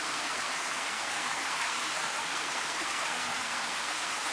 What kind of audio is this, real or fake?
fake